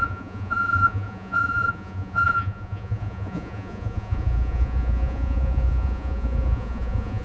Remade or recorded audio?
remade